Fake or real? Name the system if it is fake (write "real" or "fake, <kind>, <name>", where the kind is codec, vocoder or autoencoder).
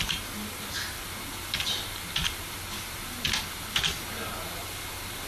real